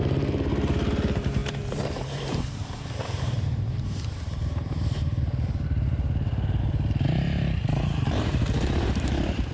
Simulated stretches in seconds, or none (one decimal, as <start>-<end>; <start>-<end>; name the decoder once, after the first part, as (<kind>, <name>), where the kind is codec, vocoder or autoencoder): 0.0-9.5 (vocoder, BigVGAN v2)